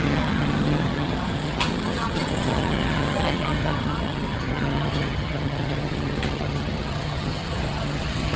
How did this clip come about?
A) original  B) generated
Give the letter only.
B